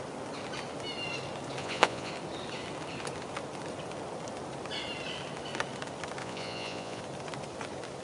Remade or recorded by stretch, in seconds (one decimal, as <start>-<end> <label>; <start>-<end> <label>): 0.0-1.6 recorded; 1.6-2.1 remade; 2.1-6.2 recorded; 6.2-7.0 remade; 7.0-8.0 recorded